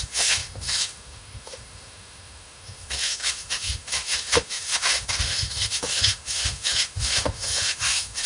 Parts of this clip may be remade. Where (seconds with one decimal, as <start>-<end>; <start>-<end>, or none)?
0.0-8.3